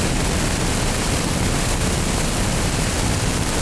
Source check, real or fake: real